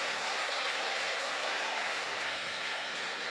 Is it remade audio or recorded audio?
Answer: remade